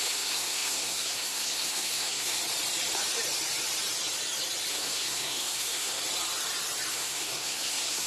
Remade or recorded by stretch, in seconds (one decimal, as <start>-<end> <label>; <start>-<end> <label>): 0.0-2.4 remade; 2.4-4.7 recorded; 4.7-6.0 remade; 6.0-6.9 recorded; 6.9-8.1 remade